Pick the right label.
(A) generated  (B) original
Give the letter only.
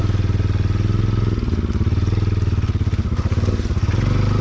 B